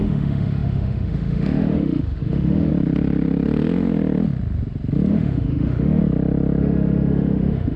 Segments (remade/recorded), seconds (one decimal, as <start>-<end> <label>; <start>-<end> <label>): 0.0-2.7 remade; 2.7-5.1 recorded; 5.1-6.0 remade; 6.0-6.6 recorded; 6.6-7.8 remade